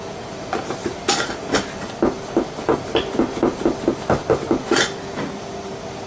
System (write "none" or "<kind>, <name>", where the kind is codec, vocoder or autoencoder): none